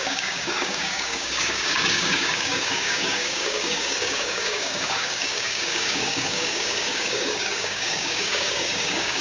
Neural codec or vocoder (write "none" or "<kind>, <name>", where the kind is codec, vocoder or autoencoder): codec, DAC